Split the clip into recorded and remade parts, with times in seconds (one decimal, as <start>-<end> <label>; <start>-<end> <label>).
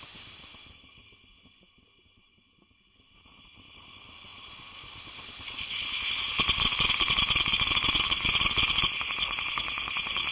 0.0-10.3 recorded